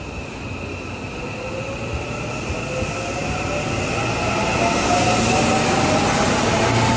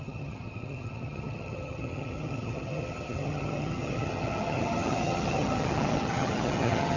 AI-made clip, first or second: second